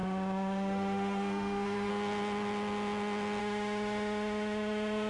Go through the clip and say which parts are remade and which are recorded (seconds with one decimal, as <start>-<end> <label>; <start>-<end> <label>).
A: 0.0-1.9 remade; 1.9-3.4 recorded; 3.4-5.1 remade